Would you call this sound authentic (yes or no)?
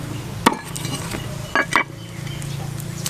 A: yes